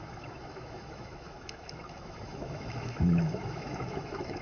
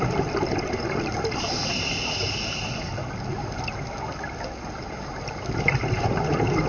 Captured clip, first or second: second